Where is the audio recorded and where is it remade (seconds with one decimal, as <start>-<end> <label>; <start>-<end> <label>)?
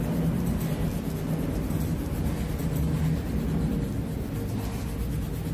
0.0-5.5 recorded